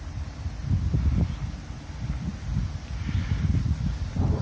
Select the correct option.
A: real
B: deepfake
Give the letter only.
A